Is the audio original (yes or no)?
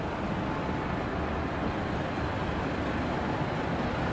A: yes